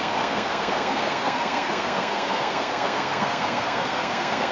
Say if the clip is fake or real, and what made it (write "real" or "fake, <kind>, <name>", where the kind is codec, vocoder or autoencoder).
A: fake, codec, SNAC